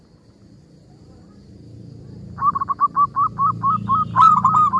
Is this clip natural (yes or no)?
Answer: yes